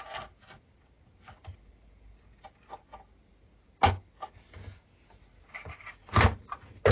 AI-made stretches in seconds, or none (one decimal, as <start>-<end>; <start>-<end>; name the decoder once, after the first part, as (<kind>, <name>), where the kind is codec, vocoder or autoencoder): none